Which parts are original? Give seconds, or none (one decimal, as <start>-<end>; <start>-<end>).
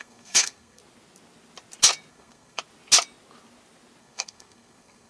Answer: 0.8-2.1; 2.6-4.0